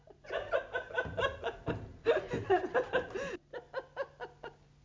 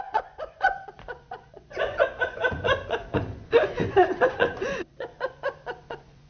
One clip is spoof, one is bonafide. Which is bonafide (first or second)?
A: first